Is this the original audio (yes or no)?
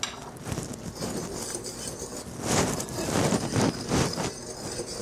yes